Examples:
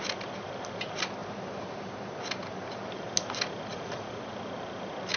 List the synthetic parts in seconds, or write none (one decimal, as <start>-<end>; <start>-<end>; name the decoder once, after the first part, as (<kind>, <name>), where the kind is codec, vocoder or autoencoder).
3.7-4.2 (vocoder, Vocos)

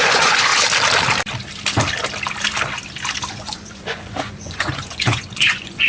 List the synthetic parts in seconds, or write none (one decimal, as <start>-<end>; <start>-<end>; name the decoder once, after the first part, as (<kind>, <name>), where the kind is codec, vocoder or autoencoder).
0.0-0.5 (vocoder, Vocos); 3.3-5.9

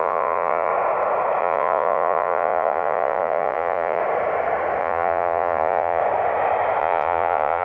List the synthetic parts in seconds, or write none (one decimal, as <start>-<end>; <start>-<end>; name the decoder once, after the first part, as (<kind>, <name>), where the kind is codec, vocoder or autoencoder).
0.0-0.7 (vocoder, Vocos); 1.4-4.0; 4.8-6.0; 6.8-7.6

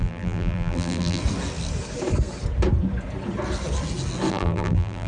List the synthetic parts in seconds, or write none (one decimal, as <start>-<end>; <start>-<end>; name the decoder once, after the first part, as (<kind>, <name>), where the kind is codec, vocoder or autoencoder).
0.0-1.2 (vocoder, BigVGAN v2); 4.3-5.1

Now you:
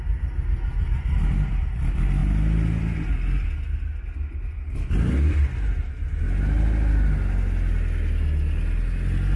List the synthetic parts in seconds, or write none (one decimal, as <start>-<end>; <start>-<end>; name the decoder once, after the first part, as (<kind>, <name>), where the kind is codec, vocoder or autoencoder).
none

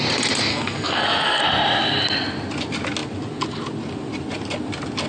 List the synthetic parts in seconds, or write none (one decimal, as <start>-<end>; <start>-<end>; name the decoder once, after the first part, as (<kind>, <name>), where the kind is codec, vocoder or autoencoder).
0.5-1.4 (codec, SNAC)